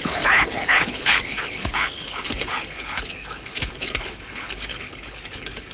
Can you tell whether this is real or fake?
fake